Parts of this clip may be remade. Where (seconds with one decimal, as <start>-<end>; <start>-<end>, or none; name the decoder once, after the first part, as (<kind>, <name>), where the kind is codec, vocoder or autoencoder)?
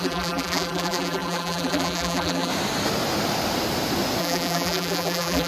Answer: 0.0-2.5 (vocoder, BigVGAN v2); 4.2-5.5